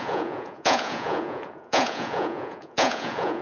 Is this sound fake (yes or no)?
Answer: yes